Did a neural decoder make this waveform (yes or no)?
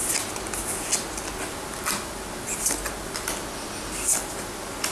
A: no